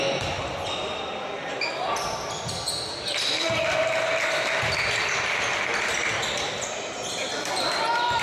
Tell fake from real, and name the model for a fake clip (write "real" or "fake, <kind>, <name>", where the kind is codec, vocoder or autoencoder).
real